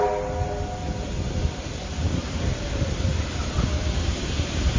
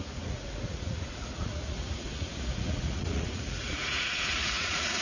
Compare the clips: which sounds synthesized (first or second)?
second